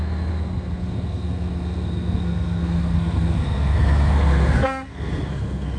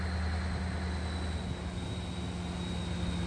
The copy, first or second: first